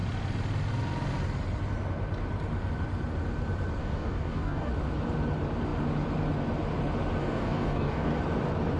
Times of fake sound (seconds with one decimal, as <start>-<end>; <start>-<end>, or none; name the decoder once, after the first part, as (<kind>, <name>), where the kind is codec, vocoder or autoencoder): 3.8-4.7 (codec, DAC); 7.2-8.2